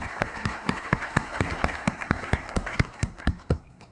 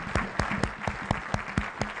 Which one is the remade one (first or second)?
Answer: first